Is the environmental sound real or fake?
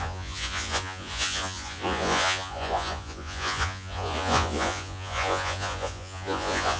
fake